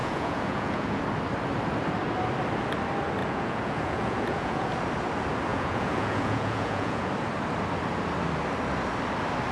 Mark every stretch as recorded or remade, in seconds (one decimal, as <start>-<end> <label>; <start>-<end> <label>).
0.0-1.0 remade; 1.0-3.2 recorded; 3.2-4.7 remade; 4.7-5.5 recorded; 5.5-7.1 remade; 7.1-9.5 recorded